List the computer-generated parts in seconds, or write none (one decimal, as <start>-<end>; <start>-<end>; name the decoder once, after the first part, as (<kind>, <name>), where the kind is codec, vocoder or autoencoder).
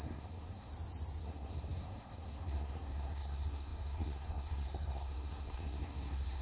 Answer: 0.0-0.7 (codec, SNAC); 1.2-6.4